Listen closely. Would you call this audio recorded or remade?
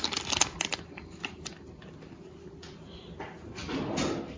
recorded